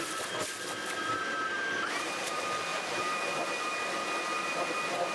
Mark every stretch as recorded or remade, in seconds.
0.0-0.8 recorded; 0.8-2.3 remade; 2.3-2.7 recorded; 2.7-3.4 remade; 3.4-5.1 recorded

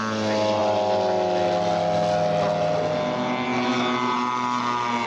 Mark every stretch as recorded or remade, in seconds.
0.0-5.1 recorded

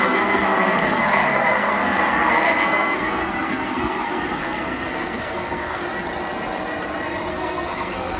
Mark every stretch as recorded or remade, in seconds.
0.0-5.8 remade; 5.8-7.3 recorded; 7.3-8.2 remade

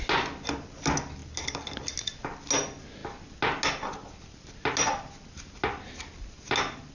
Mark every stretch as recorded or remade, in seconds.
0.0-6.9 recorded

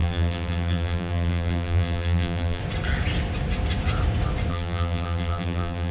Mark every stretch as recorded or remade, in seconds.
0.0-2.6 remade; 2.6-4.5 recorded; 4.5-5.9 remade

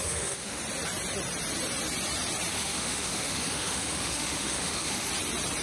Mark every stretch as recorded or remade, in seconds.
0.0-0.6 remade; 0.6-2.5 recorded; 2.5-5.1 remade; 5.1-5.6 recorded